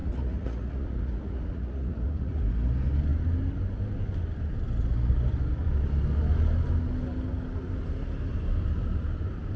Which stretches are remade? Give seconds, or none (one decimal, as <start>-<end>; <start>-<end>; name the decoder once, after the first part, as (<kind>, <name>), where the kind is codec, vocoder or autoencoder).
0.0-2.4 (vocoder, Vocos)